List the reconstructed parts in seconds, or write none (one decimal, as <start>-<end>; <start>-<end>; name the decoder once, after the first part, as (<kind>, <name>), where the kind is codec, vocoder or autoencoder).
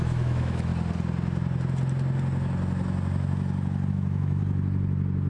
0.0-0.7 (autoencoder, DAC-VAE); 3.9-4.4